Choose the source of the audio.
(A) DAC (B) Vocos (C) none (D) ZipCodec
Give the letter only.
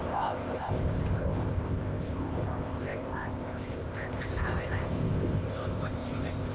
D